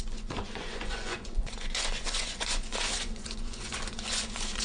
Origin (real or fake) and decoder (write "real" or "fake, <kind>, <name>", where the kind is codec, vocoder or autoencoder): fake, vocoder, Vocos